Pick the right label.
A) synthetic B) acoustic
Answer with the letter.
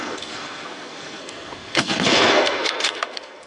A